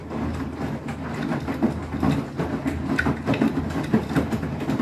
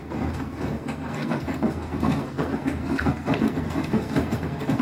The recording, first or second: first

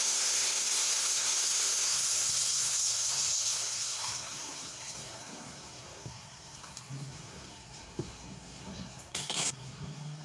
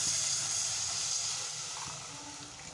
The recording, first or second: second